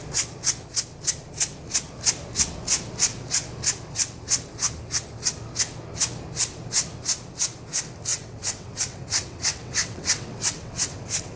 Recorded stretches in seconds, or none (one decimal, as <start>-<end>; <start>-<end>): 0.0-8.1